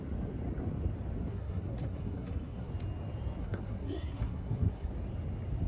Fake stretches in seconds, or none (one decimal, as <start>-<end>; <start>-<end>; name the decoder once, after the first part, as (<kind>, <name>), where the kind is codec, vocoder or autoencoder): 1.3-2.7 (codec, SNAC); 3.4-4.9